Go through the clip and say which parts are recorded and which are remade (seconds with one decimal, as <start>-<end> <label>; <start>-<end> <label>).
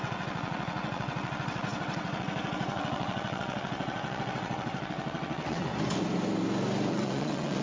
0.0-5.7 remade; 5.7-6.9 recorded; 6.9-7.6 remade